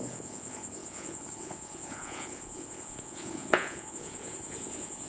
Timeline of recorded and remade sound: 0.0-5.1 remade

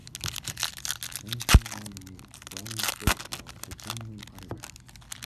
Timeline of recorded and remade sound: 0.0-5.2 recorded

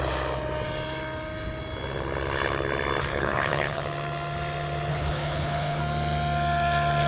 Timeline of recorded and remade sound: 0.0-3.0 recorded; 3.0-3.8 remade; 3.8-4.9 recorded; 4.9-5.8 remade; 5.8-7.1 recorded

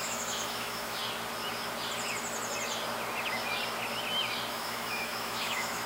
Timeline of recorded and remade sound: 0.0-1.0 remade; 1.0-4.5 recorded; 4.5-5.9 remade

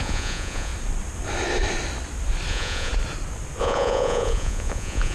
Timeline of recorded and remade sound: 0.0-0.7 remade; 0.7-2.5 recorded; 2.5-2.9 remade; 2.9-3.6 recorded; 3.6-5.1 remade

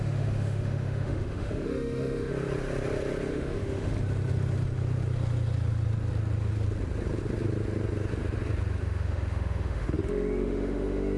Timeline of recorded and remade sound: 0.0-2.3 remade; 2.3-3.3 recorded; 3.3-3.9 remade; 3.9-8.8 recorded; 8.8-11.2 remade

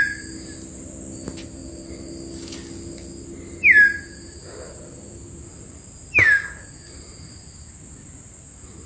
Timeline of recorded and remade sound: 0.0-8.9 recorded

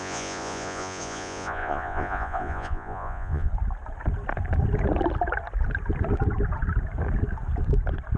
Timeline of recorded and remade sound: 0.0-3.5 remade; 3.5-8.2 recorded